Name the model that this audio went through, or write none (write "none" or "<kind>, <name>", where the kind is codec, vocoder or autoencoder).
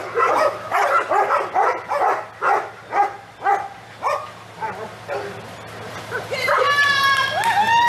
none